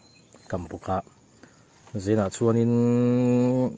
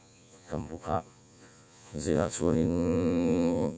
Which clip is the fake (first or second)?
second